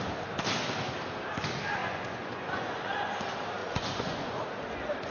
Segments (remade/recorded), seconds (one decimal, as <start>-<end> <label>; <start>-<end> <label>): 0.0-1.8 recorded; 1.8-3.1 remade; 3.1-3.6 recorded; 3.6-4.4 remade; 4.4-5.1 recorded